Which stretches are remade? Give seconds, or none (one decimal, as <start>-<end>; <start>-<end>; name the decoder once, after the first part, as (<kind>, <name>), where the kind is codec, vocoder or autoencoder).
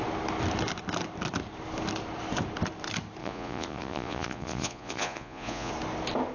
3.2-5.7 (vocoder, Vocos)